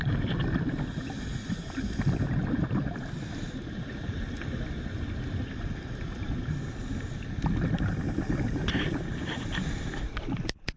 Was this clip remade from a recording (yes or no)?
no